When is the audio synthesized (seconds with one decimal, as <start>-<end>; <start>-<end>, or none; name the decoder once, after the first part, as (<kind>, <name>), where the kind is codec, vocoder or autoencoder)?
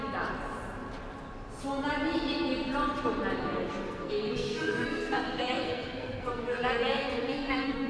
3.4-7.9 (codec, SNAC)